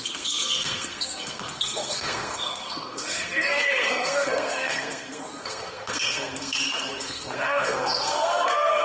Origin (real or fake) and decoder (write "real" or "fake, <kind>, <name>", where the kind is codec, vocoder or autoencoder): fake, codec, SNAC